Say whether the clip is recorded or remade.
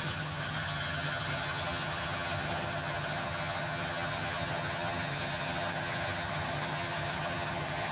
remade